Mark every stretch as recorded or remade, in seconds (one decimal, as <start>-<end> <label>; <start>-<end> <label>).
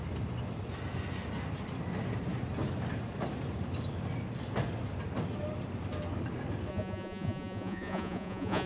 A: 0.0-6.7 recorded; 6.7-8.7 remade